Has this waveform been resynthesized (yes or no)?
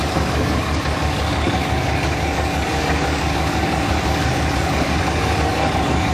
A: yes